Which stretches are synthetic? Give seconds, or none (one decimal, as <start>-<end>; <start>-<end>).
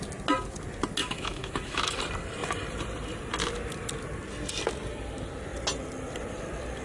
1.0-2.0